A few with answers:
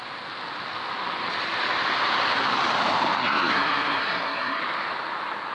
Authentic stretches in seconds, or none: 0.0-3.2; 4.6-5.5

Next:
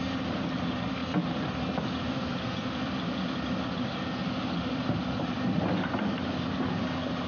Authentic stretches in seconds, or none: 0.0-7.3

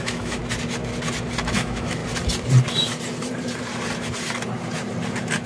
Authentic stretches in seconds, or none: 0.4-1.5; 2.0-5.5

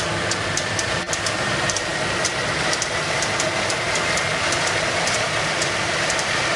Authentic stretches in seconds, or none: 0.0-6.6